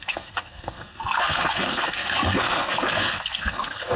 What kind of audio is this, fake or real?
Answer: fake